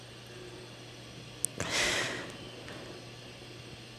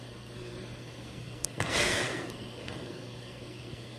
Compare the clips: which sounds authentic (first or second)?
first